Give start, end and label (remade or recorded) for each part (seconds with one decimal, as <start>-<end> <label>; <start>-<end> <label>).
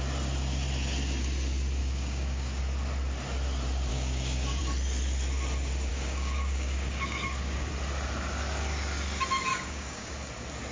0.0-1.8 recorded; 1.8-2.6 remade; 2.6-3.9 recorded; 3.9-4.6 remade; 4.6-5.9 recorded; 5.9-7.7 remade; 7.7-9.5 recorded; 9.5-10.1 remade; 10.1-10.7 recorded